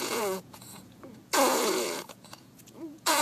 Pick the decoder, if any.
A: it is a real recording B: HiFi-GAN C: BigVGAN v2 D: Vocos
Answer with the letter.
D